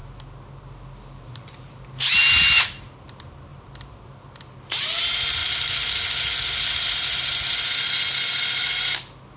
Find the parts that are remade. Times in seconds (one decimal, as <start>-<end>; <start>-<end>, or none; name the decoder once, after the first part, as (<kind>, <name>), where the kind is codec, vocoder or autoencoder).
3.5-4.3 (vocoder, BigVGAN v2)